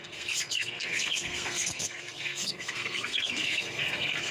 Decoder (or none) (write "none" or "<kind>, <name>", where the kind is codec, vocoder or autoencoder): codec, SNAC